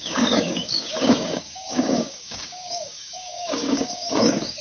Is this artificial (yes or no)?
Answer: yes